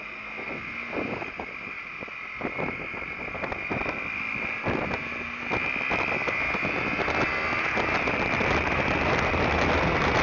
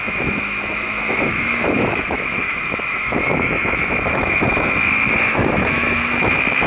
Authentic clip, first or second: first